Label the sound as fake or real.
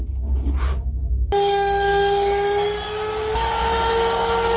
fake